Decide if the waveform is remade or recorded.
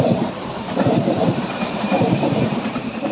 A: remade